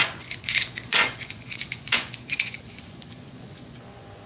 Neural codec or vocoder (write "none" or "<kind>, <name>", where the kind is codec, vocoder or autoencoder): vocoder, Vocos